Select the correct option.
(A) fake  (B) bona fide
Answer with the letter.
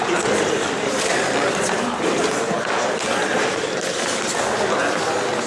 B